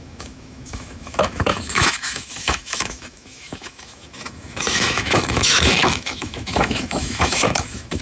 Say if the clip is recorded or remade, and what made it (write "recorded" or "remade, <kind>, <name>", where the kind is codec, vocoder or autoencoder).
remade, autoencoder, DAC-VAE